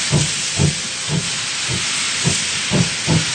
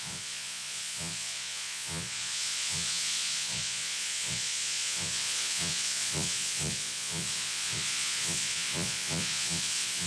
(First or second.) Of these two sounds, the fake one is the second